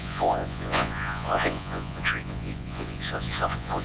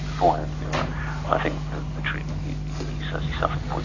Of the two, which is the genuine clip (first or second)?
second